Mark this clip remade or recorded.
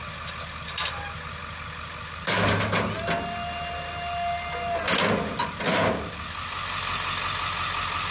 recorded